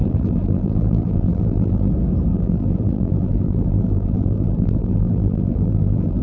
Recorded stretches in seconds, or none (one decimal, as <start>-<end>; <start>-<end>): 1.9-2.3